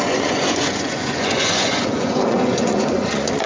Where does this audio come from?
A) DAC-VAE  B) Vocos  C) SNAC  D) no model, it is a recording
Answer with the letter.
B